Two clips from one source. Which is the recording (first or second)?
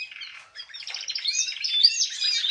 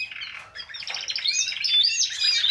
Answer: second